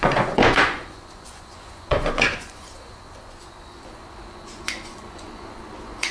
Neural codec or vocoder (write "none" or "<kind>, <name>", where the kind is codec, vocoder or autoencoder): vocoder, Vocos